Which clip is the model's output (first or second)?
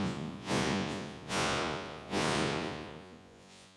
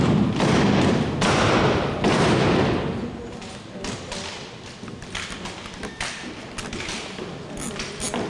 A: first